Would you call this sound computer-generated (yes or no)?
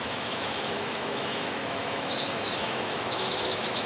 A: yes